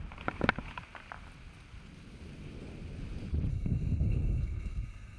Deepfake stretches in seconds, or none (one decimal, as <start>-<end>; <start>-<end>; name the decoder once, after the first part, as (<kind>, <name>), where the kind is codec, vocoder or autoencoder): 3.5-5.2 (codec, SNAC)